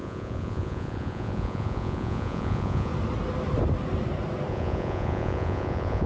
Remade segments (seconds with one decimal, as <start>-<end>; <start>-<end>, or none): 0.0-2.9; 4.5-6.1